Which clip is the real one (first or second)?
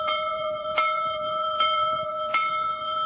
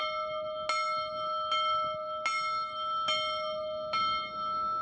second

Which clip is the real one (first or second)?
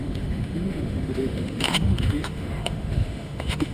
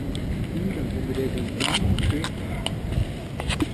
second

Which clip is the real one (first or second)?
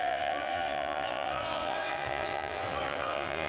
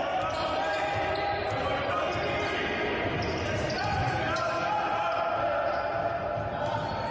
second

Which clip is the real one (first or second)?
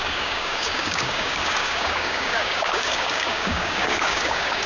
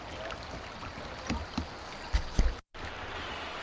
second